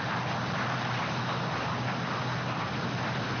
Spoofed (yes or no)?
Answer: no